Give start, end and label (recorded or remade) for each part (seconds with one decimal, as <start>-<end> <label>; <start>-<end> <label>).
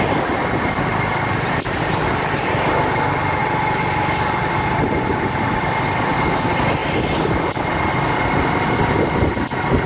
0.0-9.9 recorded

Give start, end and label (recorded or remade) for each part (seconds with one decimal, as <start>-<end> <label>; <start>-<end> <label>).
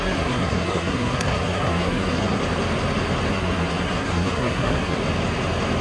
0.0-2.4 remade; 2.4-3.3 recorded; 3.3-5.0 remade; 5.0-5.8 recorded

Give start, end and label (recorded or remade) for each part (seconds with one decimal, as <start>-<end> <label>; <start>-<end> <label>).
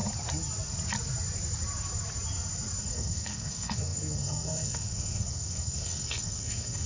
0.0-2.8 recorded; 2.8-6.9 remade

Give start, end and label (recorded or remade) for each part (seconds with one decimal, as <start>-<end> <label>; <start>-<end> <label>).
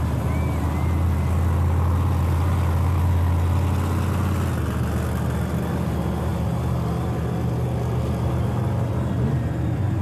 0.0-10.0 recorded